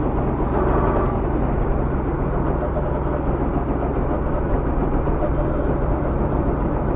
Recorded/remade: recorded